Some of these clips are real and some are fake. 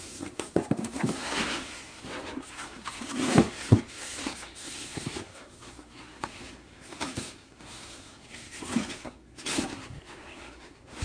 fake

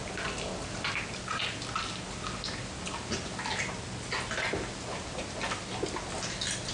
real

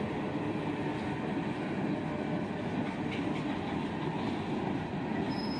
real